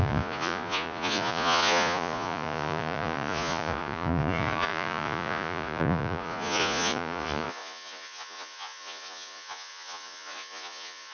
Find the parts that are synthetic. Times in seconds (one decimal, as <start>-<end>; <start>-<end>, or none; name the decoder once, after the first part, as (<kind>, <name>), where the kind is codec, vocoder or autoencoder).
0.0-11.1 (vocoder, Vocos)